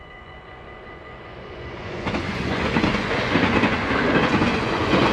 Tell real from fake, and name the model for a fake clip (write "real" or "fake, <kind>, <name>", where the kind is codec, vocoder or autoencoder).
fake, vocoder, Vocos